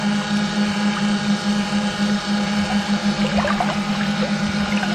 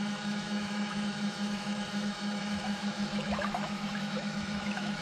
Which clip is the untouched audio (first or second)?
first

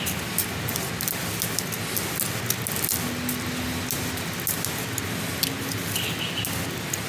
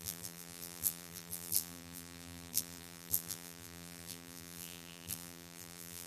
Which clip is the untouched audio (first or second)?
first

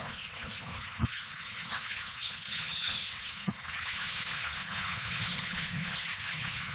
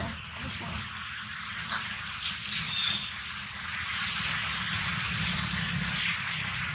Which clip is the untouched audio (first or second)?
second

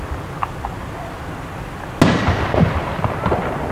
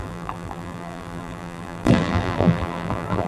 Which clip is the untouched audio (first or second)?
first